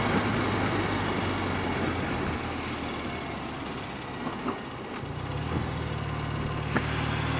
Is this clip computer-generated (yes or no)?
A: no